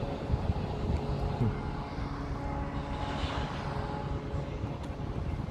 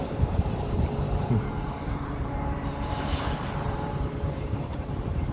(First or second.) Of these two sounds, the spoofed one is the second